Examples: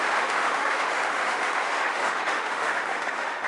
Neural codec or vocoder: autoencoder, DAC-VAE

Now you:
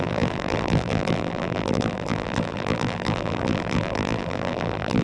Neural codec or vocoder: vocoder, BigVGAN v2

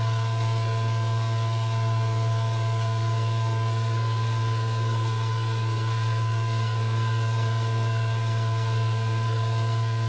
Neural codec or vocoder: codec, SNAC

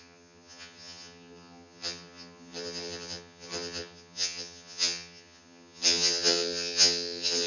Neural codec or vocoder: vocoder, HiFi-GAN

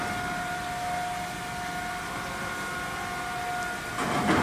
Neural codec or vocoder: none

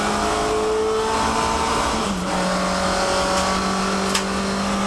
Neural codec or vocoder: none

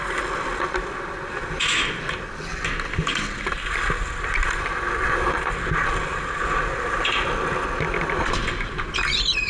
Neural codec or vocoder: none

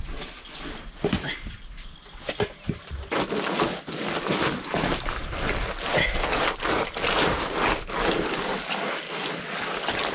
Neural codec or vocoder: none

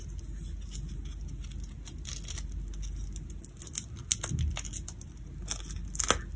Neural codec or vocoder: none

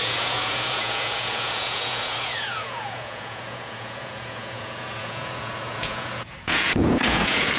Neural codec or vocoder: vocoder, Vocos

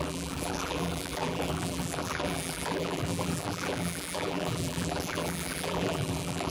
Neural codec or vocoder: vocoder, BigVGAN v2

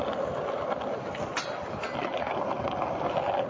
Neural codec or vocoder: none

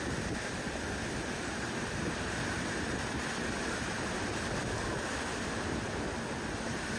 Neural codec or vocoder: none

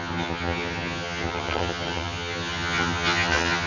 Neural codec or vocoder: vocoder, HiFi-GAN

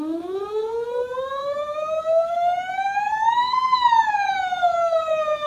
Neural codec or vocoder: autoencoder, DAC-VAE